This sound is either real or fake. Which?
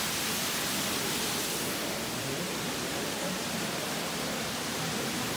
fake